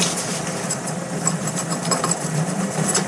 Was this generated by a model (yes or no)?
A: yes